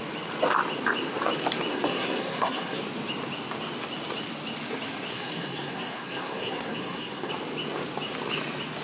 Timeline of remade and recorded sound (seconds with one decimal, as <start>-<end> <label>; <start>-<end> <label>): 0.0-1.7 recorded; 1.7-2.8 remade; 2.8-5.1 recorded; 5.1-7.3 remade; 7.3-8.8 recorded